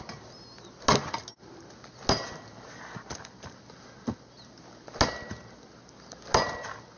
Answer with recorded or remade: recorded